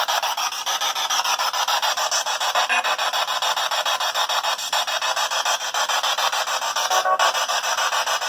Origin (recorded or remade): recorded